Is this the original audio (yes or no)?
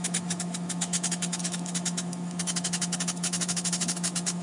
no